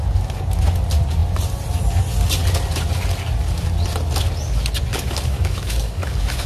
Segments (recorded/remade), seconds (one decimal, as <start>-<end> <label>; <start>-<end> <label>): 0.0-4.9 recorded; 4.9-6.5 remade